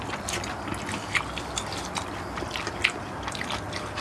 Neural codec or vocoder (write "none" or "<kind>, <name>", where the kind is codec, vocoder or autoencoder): none